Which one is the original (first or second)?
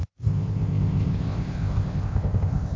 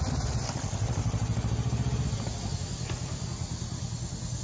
second